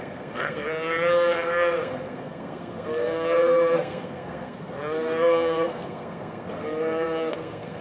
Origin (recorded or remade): remade